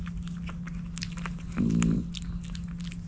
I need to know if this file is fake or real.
real